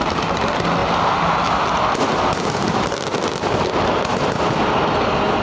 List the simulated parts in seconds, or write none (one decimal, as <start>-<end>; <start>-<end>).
none